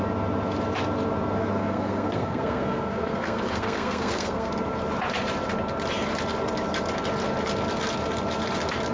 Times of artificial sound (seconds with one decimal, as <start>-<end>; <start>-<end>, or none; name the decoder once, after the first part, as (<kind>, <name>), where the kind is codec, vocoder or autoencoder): 1.4-4.5 (codec, SNAC)